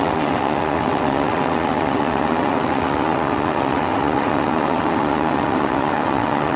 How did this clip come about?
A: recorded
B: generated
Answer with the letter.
B